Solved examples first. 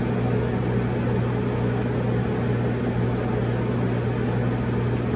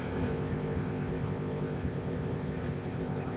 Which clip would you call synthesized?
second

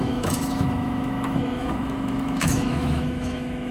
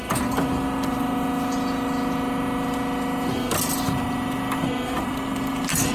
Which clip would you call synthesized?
first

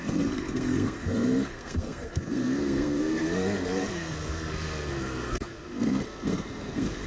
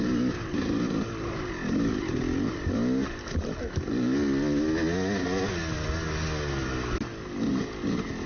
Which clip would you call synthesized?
first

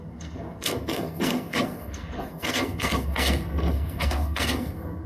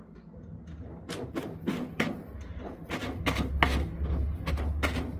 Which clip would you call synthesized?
first